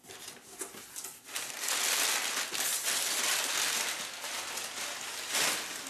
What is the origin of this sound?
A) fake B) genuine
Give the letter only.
B